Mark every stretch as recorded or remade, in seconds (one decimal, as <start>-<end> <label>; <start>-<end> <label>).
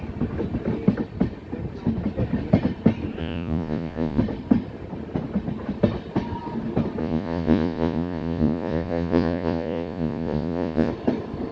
0.0-3.2 recorded; 3.2-4.2 remade; 4.2-7.0 recorded; 7.0-10.9 remade; 10.9-11.5 recorded